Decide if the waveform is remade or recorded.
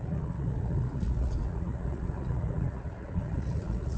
remade